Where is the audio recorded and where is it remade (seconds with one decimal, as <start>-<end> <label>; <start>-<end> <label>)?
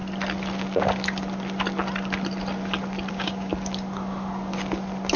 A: 0.0-3.1 recorded; 3.1-3.5 remade; 3.5-5.2 recorded